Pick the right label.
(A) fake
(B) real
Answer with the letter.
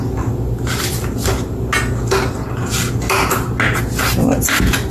B